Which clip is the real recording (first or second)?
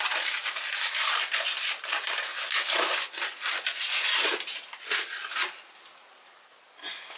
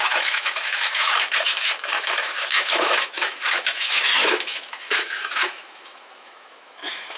first